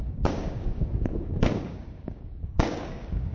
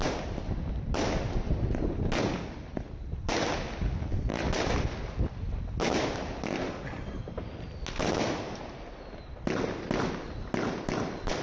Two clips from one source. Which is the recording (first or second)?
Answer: second